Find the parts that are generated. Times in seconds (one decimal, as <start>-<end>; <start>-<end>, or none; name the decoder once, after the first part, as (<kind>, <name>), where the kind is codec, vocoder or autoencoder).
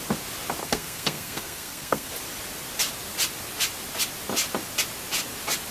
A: 0.6-2.1 (codec, SNAC)